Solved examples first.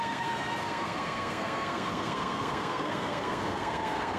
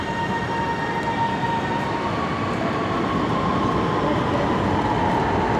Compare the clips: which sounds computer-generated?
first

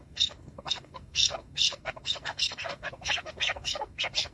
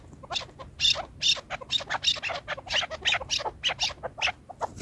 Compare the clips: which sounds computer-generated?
first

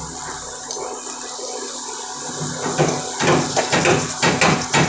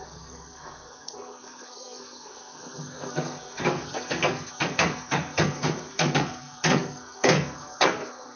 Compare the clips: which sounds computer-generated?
second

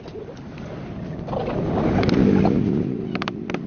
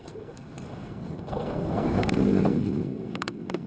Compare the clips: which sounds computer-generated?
second